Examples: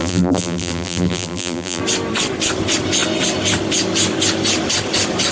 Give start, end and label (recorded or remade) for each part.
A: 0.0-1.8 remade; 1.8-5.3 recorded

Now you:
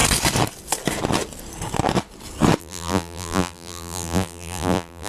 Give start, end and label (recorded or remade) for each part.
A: 0.0-2.6 recorded; 2.6-5.1 remade

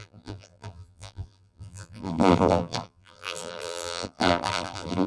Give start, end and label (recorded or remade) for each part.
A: 0.0-5.1 remade

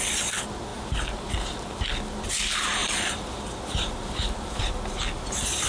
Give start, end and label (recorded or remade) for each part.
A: 0.0-2.8 recorded; 2.8-4.6 remade; 4.6-5.7 recorded

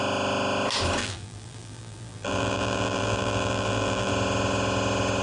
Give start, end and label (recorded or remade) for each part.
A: 0.0-1.0 recorded; 1.0-4.1 remade; 4.1-5.2 recorded